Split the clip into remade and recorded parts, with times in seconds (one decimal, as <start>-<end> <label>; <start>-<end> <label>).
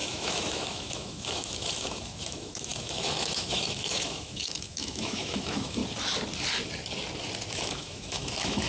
0.0-5.8 remade; 5.8-7.5 recorded; 7.5-8.7 remade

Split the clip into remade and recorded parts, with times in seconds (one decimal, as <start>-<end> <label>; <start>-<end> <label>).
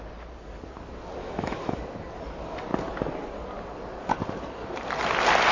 0.0-1.2 recorded; 1.2-1.8 remade; 1.8-5.5 recorded